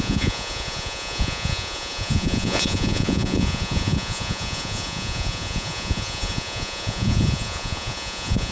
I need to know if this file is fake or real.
fake